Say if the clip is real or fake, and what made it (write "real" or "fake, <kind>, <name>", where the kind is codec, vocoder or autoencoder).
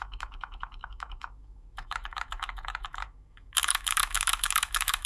fake, autoencoder, DAC-VAE